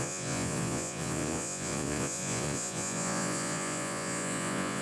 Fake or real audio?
fake